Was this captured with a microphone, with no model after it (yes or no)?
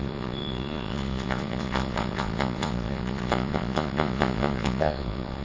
no